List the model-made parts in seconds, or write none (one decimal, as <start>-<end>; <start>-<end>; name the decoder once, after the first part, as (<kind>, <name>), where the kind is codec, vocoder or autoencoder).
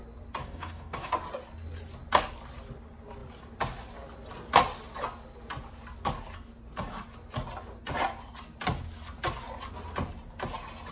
0.4-1.1 (codec, DAC)